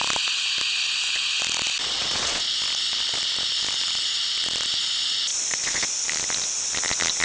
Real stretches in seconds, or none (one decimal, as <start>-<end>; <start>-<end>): 0.0-1.8; 2.5-5.3; 5.9-7.2